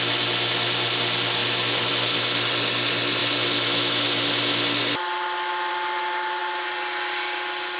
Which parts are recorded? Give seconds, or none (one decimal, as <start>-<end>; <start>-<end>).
0.0-7.8